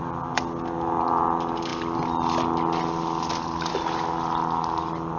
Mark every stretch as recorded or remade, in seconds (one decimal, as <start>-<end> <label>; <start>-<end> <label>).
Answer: 0.0-5.2 recorded